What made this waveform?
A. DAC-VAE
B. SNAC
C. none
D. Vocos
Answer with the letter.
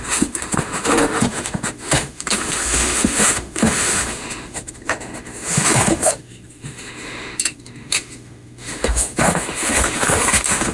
A